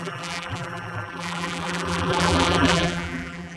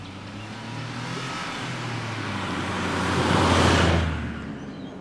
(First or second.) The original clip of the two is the second